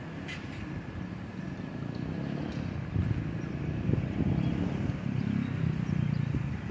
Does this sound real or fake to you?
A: real